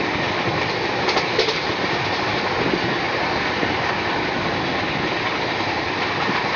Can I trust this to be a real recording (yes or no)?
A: yes